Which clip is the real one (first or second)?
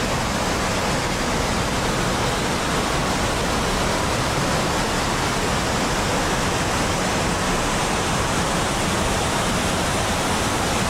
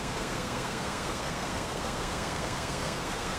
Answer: first